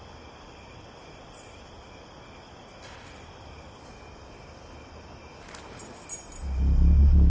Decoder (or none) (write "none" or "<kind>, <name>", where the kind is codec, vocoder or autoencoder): none